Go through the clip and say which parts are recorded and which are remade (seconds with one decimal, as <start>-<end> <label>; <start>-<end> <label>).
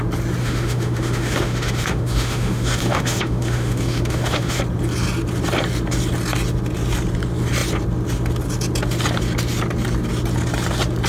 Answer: 0.0-0.4 recorded; 0.4-4.6 remade; 4.6-11.1 recorded